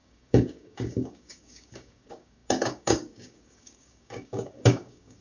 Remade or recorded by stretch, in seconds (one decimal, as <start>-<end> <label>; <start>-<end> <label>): 0.0-5.2 remade